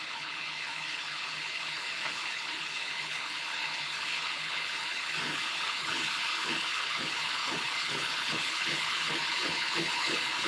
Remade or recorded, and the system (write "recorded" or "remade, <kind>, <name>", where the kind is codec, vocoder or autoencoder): remade, codec, HILCodec